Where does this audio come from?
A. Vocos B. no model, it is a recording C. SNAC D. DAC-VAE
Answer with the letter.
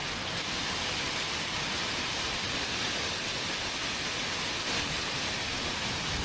B